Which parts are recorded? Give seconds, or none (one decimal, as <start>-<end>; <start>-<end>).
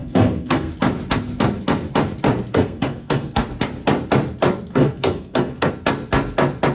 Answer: 0.7-2.5; 3.5-4.7; 5.7-6.7